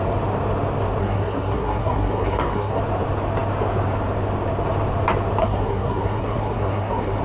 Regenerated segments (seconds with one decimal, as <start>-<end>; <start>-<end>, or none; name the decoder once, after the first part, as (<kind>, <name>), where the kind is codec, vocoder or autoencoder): 1.0-2.8 (codec, SNAC); 5.4-7.2